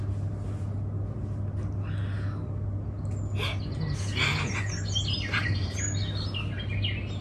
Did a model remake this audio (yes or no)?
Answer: no